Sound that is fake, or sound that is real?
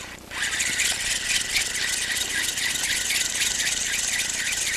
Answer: real